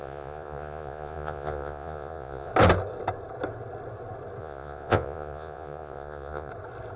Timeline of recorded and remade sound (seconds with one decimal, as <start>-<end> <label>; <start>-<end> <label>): 0.0-2.5 remade; 2.5-4.4 recorded; 4.4-6.5 remade; 6.5-7.0 recorded